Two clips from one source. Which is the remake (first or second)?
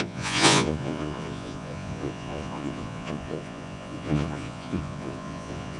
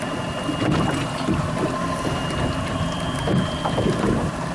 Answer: first